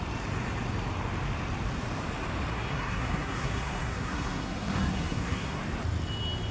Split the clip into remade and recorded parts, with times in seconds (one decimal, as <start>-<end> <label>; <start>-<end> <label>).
0.0-2.5 recorded; 2.5-5.6 remade; 5.6-6.5 recorded